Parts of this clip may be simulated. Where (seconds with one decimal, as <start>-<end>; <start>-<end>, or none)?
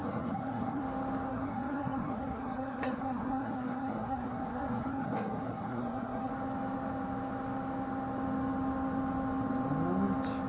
0.0-0.8; 1.3-6.3